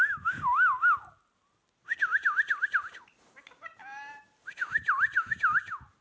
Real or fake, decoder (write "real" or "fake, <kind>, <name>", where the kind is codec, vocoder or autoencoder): real